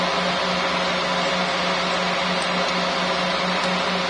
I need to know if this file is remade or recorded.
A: recorded